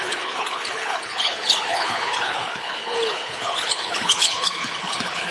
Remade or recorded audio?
remade